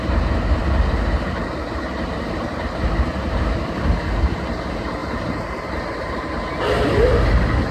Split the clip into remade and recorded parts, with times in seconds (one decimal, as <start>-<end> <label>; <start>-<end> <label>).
0.0-7.7 recorded